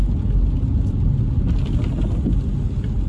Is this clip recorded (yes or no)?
yes